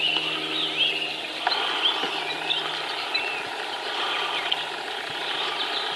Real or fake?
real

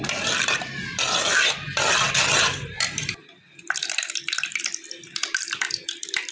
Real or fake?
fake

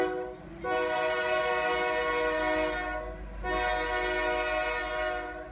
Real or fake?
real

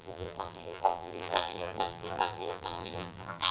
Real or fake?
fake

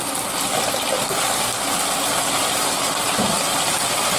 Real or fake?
real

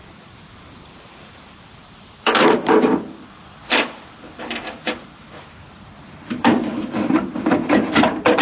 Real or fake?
fake